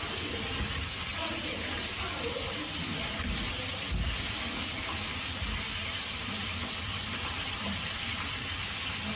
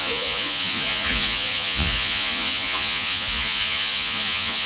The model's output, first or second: second